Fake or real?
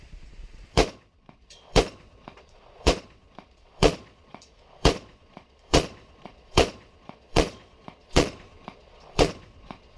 fake